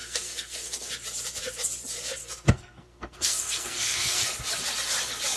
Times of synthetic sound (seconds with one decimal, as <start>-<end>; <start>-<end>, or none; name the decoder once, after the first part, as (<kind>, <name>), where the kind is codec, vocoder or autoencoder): 0.0-0.9 (codec, SNAC); 2.2-4.3